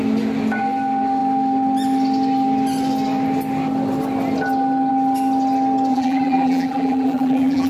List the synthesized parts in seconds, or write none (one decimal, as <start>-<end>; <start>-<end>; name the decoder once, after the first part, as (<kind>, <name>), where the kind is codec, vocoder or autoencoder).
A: 5.9-7.7 (vocoder, BigVGAN v2)